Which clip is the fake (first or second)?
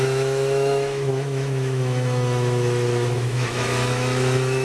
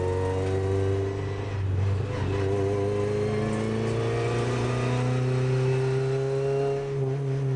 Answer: first